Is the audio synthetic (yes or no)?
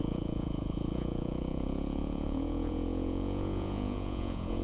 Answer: yes